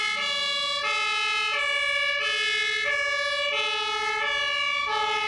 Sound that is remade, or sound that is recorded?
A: recorded